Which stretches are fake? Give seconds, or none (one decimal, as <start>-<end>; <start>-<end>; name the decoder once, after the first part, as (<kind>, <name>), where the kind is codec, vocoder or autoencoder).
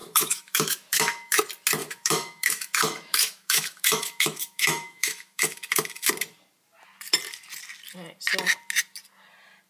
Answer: 0.0-1.4 (autoencoder, DAC-VAE); 1.8-6.1